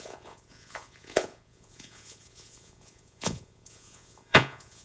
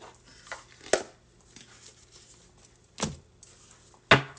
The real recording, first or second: second